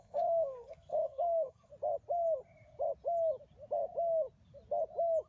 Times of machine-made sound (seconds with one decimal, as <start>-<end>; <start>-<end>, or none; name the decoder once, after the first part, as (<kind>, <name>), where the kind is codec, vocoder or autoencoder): 0.0-1.7 (codec, SNAC)